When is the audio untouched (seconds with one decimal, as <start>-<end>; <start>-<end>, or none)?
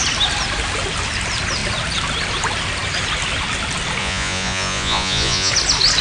0.0-4.0; 5.5-6.0